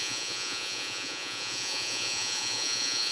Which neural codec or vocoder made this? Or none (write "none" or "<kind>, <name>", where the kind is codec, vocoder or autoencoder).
vocoder, Vocos